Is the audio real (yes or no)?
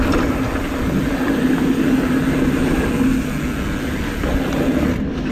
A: yes